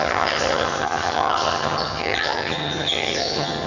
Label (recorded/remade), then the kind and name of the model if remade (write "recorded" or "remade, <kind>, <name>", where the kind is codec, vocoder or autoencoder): remade, vocoder, HiFi-GAN